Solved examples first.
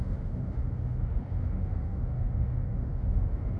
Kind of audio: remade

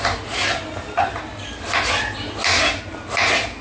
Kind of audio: recorded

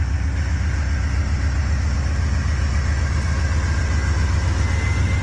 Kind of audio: recorded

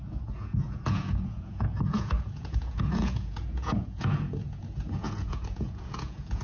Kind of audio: remade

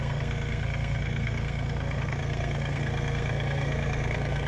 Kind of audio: remade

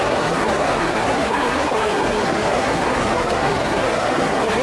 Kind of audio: remade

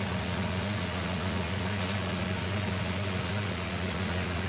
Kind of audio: remade